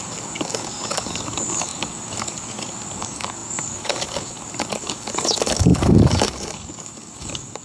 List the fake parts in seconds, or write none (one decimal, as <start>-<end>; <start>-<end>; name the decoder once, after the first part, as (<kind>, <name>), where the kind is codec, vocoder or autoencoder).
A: 0.0-7.6 (codec, DAC)